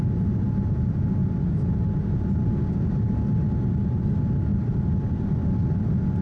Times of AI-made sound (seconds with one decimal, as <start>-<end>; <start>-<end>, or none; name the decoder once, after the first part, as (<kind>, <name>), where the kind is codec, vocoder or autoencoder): 4.5-5.2 (vocoder, BigVGAN v2)